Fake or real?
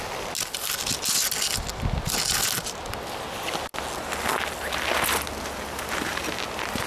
real